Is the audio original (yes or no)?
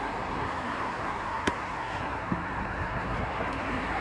no